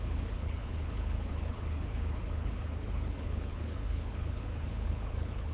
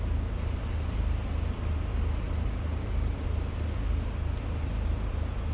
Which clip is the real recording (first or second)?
second